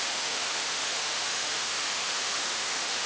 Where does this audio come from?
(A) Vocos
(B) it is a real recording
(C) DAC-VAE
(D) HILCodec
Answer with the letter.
C